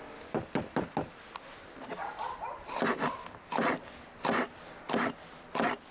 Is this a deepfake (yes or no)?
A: no